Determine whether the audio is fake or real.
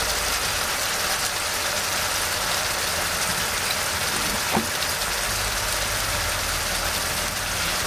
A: real